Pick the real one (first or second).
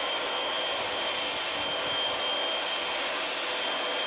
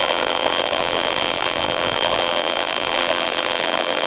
first